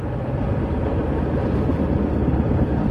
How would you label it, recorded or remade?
recorded